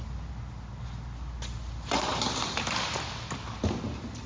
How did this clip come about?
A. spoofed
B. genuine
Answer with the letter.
B